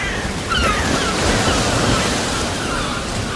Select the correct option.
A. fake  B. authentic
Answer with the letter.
B